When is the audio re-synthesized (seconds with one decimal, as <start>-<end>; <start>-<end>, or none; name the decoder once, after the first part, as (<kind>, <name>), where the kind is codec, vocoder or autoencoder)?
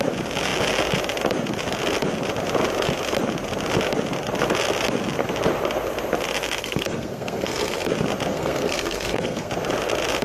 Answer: 6.6-7.9 (codec, SNAC); 8.3-9.5